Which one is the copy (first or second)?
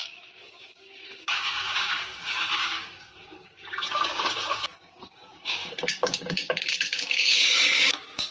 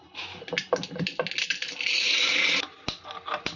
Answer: first